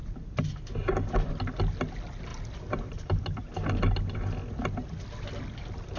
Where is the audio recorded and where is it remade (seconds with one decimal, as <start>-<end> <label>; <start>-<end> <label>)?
0.0-2.3 recorded; 2.3-3.7 remade; 3.7-6.0 recorded